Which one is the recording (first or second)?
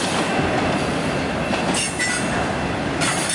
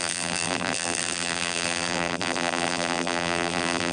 first